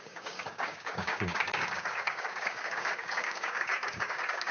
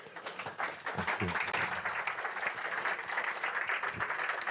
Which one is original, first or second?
second